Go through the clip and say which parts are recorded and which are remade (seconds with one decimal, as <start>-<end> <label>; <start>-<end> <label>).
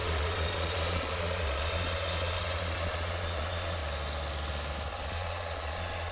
0.0-3.8 remade; 3.8-4.9 recorded; 4.9-6.1 remade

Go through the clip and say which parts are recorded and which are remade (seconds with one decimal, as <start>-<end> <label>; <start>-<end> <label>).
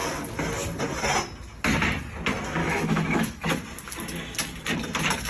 0.0-2.6 recorded; 2.6-3.5 remade; 3.5-5.3 recorded